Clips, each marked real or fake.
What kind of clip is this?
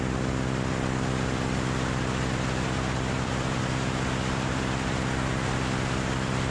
fake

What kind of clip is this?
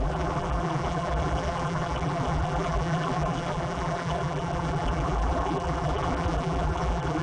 fake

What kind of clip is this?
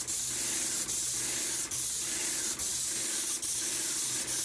real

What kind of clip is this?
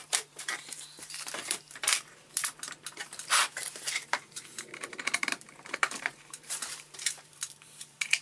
fake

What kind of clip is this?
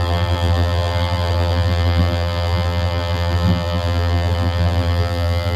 fake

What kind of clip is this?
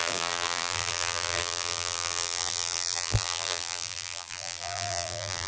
fake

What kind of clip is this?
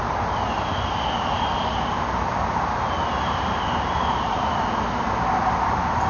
fake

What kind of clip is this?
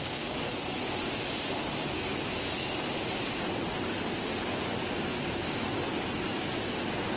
real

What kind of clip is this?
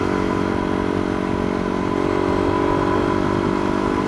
real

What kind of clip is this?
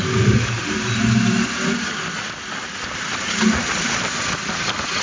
real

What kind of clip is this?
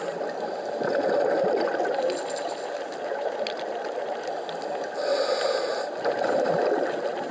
real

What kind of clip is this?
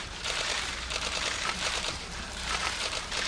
fake